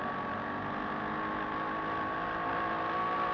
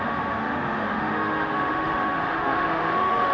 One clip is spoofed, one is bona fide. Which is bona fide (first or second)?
first